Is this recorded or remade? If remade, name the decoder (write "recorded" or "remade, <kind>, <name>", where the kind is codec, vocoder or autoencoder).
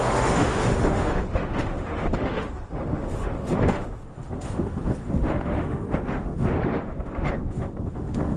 remade, autoencoder, DAC-VAE